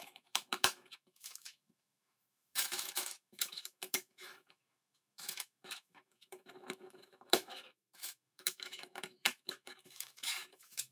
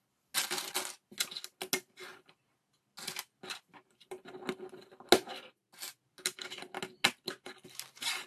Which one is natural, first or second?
second